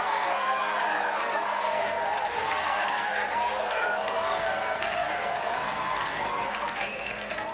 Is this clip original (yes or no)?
no